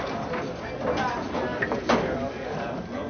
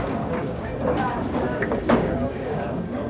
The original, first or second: first